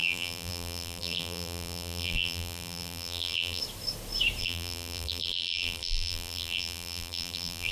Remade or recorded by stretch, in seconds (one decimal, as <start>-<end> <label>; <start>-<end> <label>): 0.0-3.6 remade; 3.6-4.4 recorded; 4.4-7.7 remade